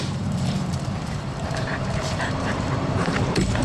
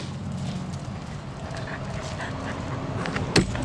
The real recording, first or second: second